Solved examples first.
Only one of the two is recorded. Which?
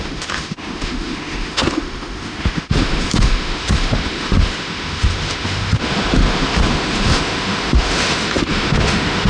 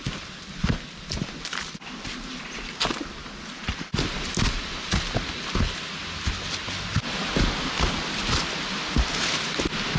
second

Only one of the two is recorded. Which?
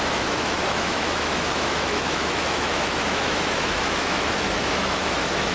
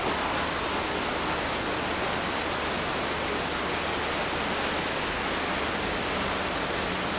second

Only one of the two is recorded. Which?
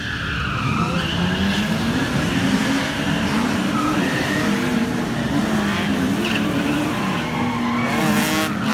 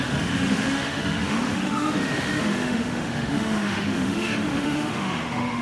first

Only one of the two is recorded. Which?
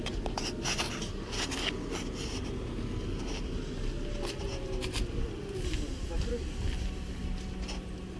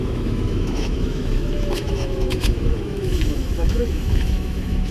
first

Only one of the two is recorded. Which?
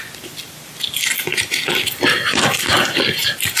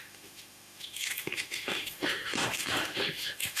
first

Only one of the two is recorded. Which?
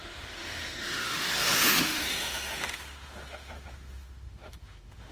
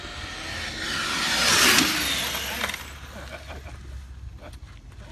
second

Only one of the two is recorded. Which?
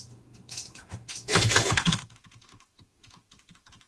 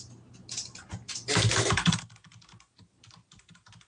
second